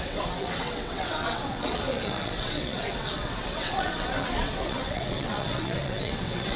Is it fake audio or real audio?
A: fake